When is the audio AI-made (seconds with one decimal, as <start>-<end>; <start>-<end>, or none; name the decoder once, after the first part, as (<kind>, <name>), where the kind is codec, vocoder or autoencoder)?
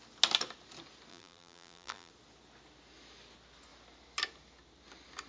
1.1-2.1 (vocoder, BigVGAN v2)